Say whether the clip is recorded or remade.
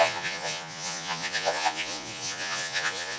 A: remade